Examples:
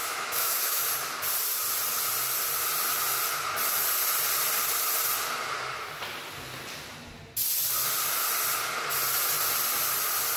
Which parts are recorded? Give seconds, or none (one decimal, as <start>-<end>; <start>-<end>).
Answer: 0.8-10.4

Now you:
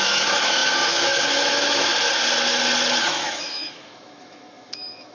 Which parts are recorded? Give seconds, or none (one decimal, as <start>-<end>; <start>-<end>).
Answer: 1.9-3.1

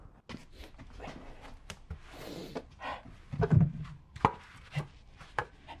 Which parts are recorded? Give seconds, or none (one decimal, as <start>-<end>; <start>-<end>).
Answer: 0.0-5.8

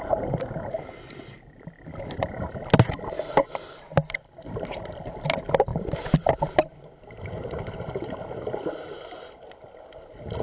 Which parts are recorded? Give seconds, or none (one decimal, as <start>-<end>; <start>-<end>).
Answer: 0.0-5.7; 6.4-10.4

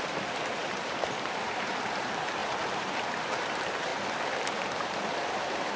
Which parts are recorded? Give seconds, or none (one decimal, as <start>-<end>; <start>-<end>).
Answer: 3.9-4.5

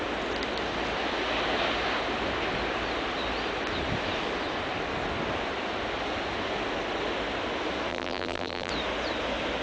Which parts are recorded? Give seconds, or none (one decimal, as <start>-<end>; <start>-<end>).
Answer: 0.0-7.9; 8.7-9.6